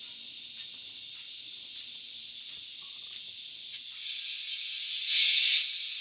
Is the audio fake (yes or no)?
no